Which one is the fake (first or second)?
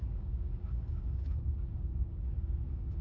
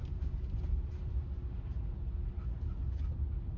first